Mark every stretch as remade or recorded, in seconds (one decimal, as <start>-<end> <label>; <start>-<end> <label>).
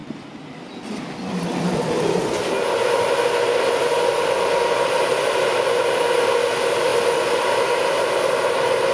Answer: 0.0-8.9 recorded